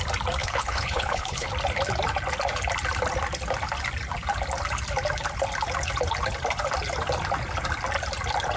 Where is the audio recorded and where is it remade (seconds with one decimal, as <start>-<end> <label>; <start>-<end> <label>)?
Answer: 0.0-0.4 recorded; 0.4-1.5 remade; 1.5-8.6 recorded